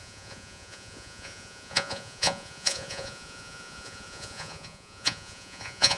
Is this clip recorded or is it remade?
remade